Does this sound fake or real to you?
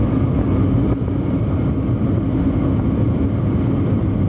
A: real